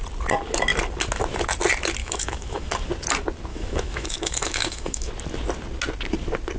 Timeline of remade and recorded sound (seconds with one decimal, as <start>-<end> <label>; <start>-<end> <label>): 0.0-2.0 recorded; 2.0-2.7 remade; 2.7-3.5 recorded; 3.5-5.1 remade; 5.1-6.6 recorded

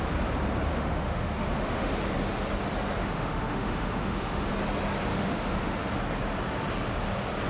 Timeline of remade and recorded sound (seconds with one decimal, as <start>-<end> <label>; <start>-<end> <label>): 0.0-0.7 recorded; 0.7-1.9 remade; 1.9-3.0 recorded; 3.0-4.5 remade; 4.5-5.1 recorded; 5.1-5.9 remade; 5.9-7.5 recorded

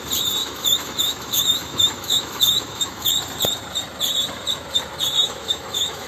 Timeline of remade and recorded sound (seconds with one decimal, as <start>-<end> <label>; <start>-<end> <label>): 0.0-0.4 recorded; 0.4-3.1 remade; 3.1-5.2 recorded; 5.2-6.1 remade

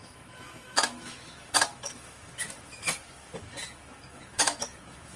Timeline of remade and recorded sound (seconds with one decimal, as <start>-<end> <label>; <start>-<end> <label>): 0.0-5.2 remade

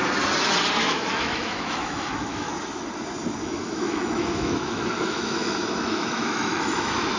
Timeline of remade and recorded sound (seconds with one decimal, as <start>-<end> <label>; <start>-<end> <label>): 0.0-0.8 recorded; 0.8-2.5 remade; 2.5-3.4 recorded; 3.4-7.2 remade

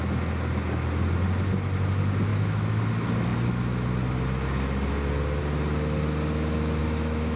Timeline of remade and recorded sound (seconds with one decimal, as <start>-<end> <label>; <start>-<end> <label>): 0.0-2.3 recorded; 2.3-2.8 remade; 2.8-6.8 recorded; 6.8-7.4 remade

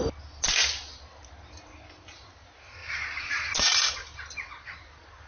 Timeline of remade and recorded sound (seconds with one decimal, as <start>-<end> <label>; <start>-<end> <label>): 0.0-5.3 recorded